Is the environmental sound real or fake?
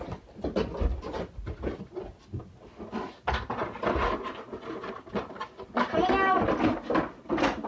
real